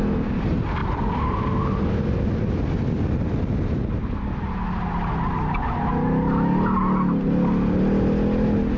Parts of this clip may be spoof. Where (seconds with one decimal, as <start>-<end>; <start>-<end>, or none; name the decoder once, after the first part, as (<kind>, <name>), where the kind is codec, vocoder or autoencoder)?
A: none